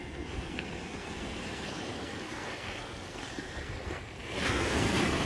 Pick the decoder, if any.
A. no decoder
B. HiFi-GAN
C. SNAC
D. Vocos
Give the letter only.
C